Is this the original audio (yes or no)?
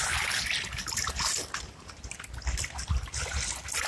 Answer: yes